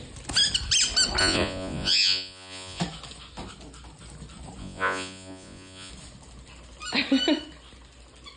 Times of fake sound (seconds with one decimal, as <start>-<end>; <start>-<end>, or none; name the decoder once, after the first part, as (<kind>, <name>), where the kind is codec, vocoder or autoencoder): 1.2-2.8 (vocoder, Vocos); 4.6-5.9